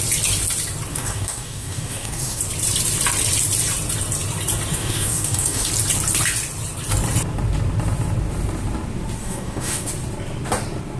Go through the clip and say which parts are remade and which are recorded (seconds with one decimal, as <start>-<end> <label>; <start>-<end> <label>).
0.0-0.9 recorded; 0.9-2.4 remade; 2.4-4.7 recorded; 4.7-5.7 remade; 5.7-9.2 recorded; 9.2-9.9 remade; 9.9-11.0 recorded